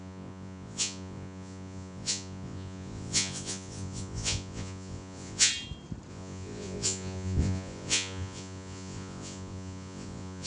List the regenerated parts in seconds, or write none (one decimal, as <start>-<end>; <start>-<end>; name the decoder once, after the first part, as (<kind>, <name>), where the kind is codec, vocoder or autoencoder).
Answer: 0.0-5.5 (vocoder, Vocos); 6.1-10.5